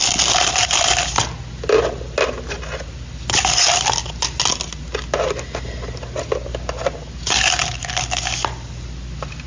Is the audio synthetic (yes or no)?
no